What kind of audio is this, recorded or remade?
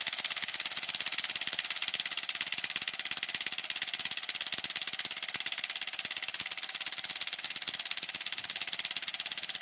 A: recorded